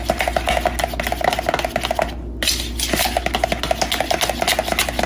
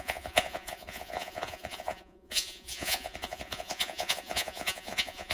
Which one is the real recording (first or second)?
first